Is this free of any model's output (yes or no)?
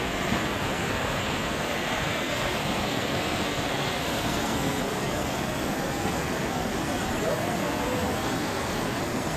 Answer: no